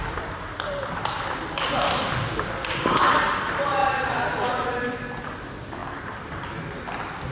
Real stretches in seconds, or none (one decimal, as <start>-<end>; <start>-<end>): 0.0-3.8; 4.7-7.3